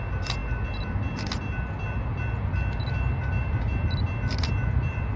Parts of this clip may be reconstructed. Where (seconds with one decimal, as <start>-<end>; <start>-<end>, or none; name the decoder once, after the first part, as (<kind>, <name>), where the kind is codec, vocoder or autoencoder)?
none

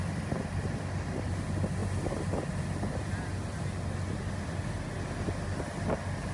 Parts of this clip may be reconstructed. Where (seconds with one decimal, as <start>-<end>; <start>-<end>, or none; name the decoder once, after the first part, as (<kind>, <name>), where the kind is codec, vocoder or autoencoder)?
none

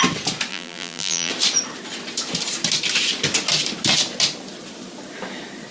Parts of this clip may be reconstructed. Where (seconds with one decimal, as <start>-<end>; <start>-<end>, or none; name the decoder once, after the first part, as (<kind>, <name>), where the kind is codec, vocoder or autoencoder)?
0.5-1.3 (vocoder, BigVGAN v2)

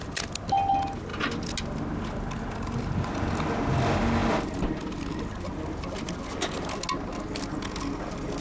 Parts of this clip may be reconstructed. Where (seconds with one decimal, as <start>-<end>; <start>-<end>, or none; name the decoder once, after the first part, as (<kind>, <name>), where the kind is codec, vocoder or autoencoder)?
none

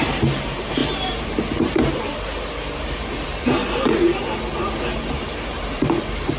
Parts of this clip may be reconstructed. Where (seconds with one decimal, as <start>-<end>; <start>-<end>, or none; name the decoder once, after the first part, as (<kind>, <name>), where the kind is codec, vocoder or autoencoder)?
0.0-3.6 (vocoder, BigVGAN v2); 5.0-6.4

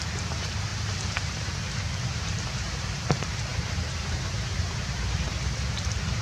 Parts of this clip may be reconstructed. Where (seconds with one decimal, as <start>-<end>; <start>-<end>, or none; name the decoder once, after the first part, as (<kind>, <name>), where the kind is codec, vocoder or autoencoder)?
0.0-6.2 (vocoder, BigVGAN v2)

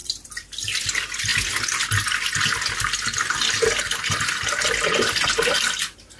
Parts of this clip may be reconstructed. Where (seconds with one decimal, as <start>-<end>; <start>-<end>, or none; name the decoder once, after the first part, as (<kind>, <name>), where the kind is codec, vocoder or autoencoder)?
0.0-0.9 (vocoder, BigVGAN v2)

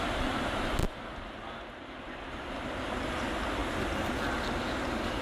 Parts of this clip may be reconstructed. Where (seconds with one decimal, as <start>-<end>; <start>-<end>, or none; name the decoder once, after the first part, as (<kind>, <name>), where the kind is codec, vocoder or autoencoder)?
3.6-4.4 (vocoder, BigVGAN v2)